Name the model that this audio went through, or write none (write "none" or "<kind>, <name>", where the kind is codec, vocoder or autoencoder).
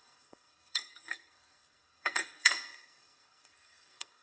codec, SNAC